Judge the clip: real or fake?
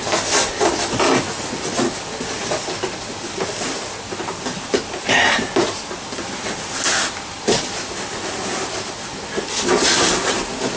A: real